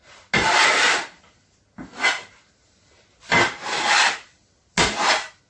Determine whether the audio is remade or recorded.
recorded